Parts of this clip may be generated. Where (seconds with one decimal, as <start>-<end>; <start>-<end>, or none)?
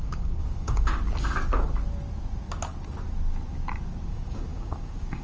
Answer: 0.0-1.0; 4.1-5.2